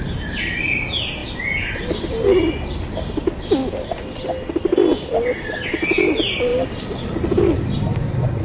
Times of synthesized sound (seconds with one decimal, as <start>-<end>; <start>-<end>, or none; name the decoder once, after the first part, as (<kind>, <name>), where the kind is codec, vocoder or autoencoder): none